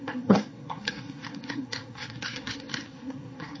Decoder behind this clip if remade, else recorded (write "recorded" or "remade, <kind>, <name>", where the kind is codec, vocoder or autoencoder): remade, codec, SNAC